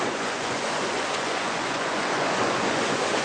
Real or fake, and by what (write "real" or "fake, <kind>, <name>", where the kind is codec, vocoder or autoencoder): fake, vocoder, Vocos